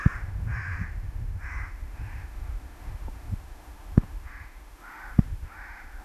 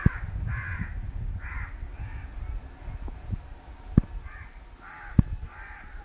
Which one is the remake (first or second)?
first